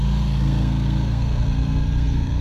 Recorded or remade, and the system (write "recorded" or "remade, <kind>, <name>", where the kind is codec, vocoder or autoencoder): remade, codec, SNAC